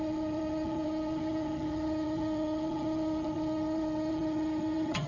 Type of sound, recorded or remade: remade